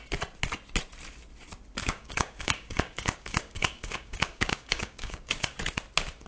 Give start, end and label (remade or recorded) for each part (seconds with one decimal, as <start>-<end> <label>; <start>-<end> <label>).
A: 0.0-1.8 recorded; 1.8-5.6 remade; 5.6-6.3 recorded